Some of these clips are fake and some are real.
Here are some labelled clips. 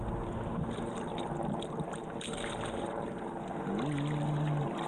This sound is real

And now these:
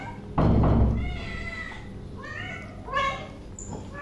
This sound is real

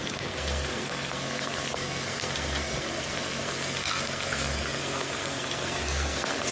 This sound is fake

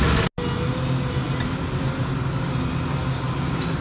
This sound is real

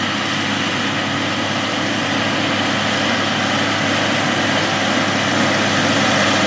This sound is real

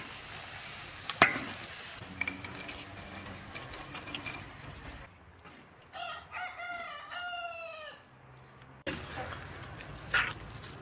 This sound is real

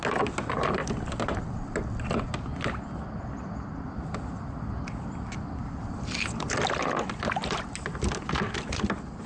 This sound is real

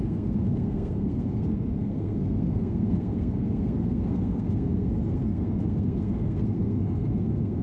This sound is fake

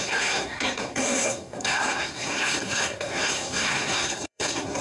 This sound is fake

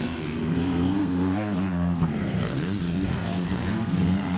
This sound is fake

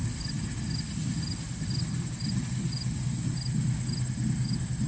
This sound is real